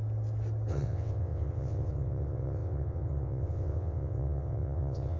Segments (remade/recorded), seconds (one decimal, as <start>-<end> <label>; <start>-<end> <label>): 0.0-0.7 recorded; 0.7-5.2 remade